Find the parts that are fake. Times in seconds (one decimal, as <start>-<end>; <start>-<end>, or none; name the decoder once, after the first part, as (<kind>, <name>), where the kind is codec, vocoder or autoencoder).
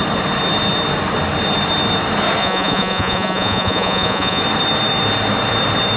2.4-4.4 (vocoder, Vocos)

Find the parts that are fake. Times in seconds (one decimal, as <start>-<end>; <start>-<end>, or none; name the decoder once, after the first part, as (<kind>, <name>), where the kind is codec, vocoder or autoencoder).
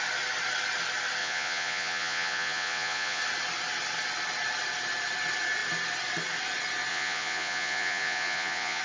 1.2-3.2 (vocoder, Vocos); 6.9-8.8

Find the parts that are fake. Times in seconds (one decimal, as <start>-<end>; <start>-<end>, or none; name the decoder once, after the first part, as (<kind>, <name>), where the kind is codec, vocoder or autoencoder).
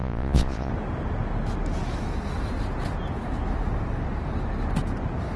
0.0-0.7 (vocoder, Vocos)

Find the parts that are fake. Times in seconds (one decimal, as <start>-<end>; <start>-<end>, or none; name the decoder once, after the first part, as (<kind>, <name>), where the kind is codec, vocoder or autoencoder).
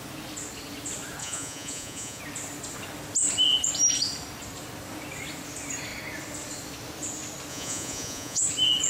1.2-2.2 (vocoder, Vocos); 7.5-8.4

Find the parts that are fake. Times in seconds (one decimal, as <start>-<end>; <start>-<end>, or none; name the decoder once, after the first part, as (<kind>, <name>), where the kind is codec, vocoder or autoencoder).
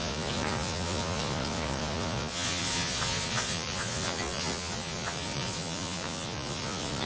0.0-7.1 (vocoder, Vocos)